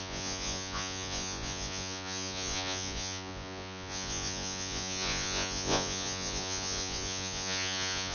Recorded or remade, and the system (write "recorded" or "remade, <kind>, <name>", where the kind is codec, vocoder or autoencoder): remade, vocoder, Vocos